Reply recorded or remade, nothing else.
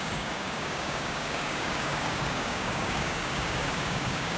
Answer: remade